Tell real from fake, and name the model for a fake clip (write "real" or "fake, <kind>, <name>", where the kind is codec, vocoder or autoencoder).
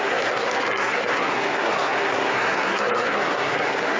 fake, codec, SNAC